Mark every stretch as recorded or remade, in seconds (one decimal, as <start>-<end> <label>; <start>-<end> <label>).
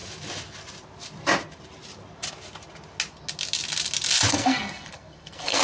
0.0-4.3 recorded; 4.3-5.6 remade